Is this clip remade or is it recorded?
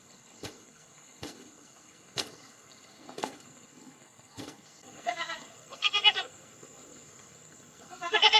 remade